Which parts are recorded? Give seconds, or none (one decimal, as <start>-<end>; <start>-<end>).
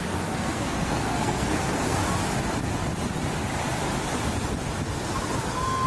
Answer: 2.0-5.5